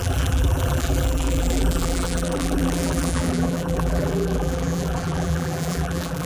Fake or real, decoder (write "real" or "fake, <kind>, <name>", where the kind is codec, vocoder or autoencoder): fake, vocoder, BigVGAN v2